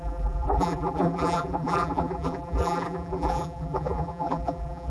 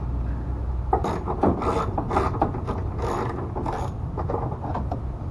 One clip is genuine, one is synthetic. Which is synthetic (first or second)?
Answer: first